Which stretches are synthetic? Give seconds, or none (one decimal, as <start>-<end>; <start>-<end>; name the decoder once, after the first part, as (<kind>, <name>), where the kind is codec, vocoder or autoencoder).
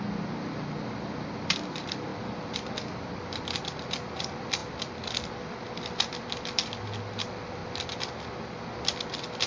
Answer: none